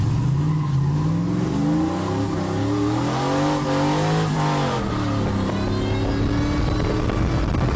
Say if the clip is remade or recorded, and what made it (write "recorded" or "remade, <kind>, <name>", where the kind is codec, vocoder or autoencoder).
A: recorded